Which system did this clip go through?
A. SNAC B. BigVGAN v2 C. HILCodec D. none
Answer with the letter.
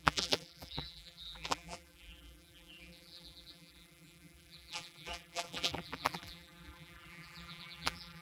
B